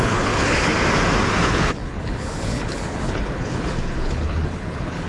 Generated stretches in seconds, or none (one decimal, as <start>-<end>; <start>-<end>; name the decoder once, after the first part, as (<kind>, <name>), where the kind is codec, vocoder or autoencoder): 0.0-0.7 (codec, HILCodec); 1.4-5.1